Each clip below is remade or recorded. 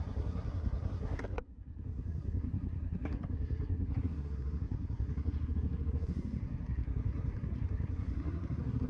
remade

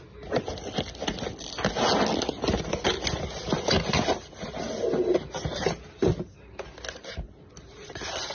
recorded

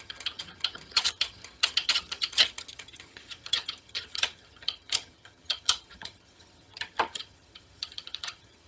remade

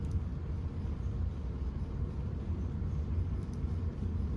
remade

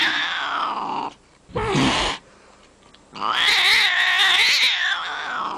recorded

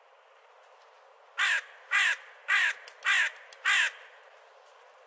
recorded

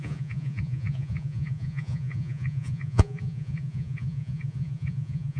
remade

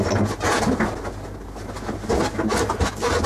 recorded